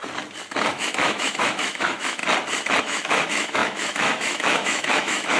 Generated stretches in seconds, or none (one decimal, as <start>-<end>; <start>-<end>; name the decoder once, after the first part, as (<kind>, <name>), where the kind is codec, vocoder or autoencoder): 0.7-2.2 (autoencoder, DAC-VAE); 2.8-5.4